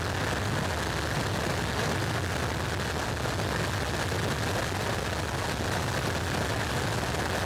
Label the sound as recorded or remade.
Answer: recorded